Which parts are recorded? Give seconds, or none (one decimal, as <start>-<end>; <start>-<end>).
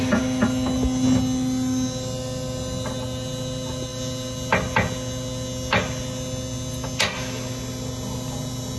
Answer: 0.0-8.8